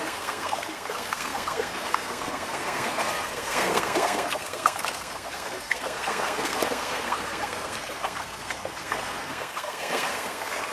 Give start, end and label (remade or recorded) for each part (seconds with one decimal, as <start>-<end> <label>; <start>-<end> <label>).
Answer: 0.0-10.7 remade

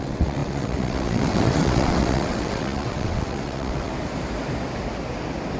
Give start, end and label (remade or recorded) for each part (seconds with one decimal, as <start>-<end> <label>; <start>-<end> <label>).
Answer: 0.0-3.9 remade; 3.9-5.6 recorded

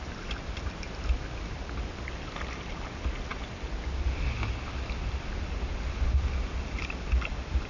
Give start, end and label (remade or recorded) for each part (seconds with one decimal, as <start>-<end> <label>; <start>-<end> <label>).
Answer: 0.0-7.7 recorded

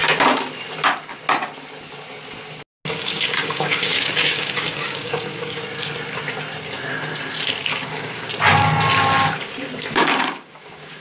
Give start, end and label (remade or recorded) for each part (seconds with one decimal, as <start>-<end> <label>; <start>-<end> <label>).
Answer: 0.0-2.9 recorded; 2.9-5.6 remade; 5.6-7.7 recorded; 7.7-8.3 remade; 8.3-9.8 recorded; 9.8-11.0 remade

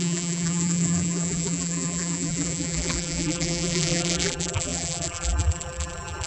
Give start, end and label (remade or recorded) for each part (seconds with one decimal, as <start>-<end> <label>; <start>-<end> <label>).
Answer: 0.0-6.3 remade

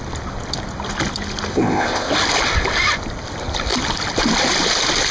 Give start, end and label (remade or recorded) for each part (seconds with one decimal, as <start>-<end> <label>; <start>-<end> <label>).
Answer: 0.0-1.5 recorded; 1.5-2.1 remade; 2.1-5.1 recorded

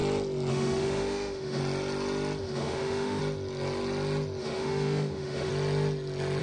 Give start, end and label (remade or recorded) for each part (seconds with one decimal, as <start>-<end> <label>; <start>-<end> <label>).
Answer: 0.0-0.5 recorded; 0.5-1.6 remade; 1.6-2.4 recorded; 2.4-3.2 remade; 3.2-4.4 recorded; 4.4-5.5 remade; 5.5-6.4 recorded

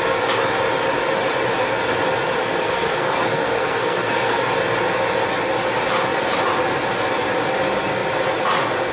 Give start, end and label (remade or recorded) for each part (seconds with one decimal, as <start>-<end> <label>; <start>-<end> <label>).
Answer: 0.0-2.4 recorded; 2.4-4.4 remade; 4.4-8.9 recorded